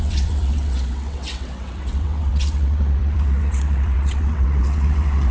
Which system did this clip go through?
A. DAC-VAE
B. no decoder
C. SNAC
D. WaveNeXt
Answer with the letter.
D